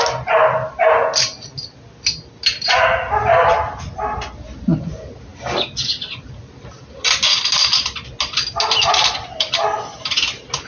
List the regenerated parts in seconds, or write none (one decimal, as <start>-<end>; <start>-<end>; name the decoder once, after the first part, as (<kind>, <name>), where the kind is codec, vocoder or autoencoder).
none